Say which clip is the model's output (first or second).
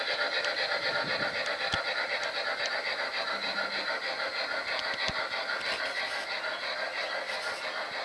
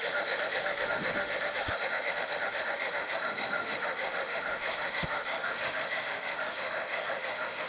second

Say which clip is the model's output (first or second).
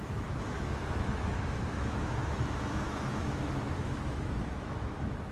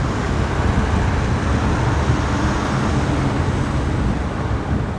first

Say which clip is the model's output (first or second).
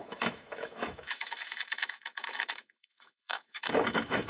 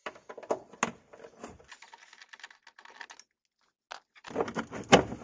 first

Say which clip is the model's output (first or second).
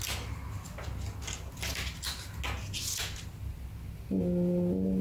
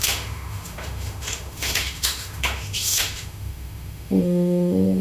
second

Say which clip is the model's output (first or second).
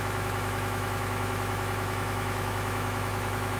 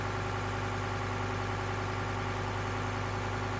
first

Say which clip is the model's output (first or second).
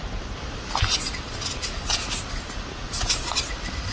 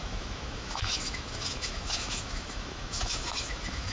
second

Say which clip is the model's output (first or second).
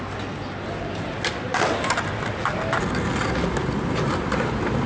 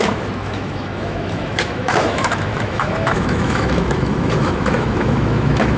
second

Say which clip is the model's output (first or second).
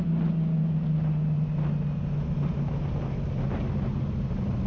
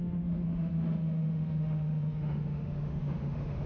second